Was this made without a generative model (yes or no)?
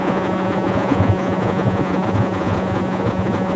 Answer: no